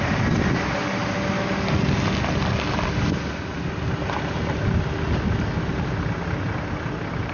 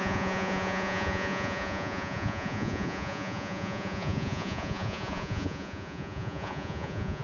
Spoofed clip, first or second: second